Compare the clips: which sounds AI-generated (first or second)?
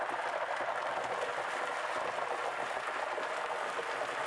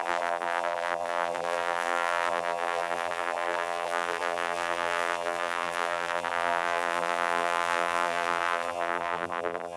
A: second